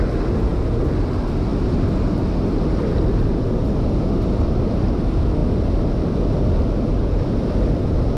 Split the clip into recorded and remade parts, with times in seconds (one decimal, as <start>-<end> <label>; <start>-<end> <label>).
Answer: 0.0-8.2 recorded